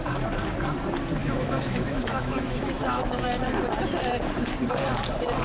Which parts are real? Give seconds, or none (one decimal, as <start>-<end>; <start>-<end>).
0.0-1.2; 3.2-5.4